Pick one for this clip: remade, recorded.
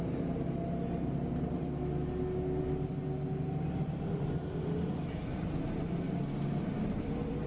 recorded